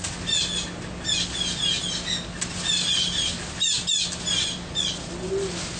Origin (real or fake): real